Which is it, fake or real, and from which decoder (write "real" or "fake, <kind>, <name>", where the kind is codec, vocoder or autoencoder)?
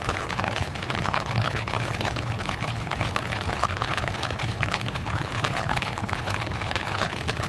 fake, codec, HILCodec